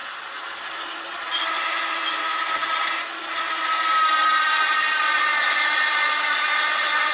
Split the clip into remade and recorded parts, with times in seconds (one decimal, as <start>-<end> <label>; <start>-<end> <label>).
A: 0.0-7.1 recorded